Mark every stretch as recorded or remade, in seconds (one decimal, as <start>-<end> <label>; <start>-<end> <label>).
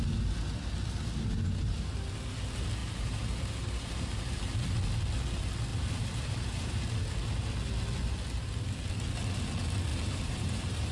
0.0-2.8 recorded; 2.8-4.3 remade; 4.3-5.7 recorded; 5.7-6.8 remade; 6.8-9.9 recorded; 9.9-10.9 remade